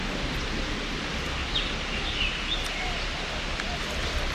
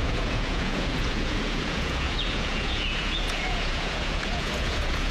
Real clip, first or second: first